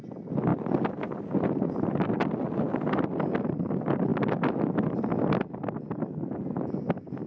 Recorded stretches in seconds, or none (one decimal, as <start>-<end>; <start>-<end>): 0.0-7.3